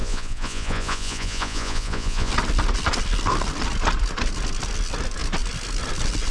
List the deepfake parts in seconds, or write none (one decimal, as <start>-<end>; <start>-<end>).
0.0-2.3